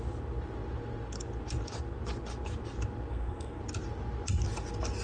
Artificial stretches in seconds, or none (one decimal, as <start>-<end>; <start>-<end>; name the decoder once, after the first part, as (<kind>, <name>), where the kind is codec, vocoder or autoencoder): 3.1-3.6 (codec, SNAC)